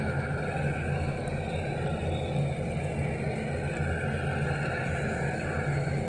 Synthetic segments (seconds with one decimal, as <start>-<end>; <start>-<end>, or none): 0.0-1.2; 4.9-6.1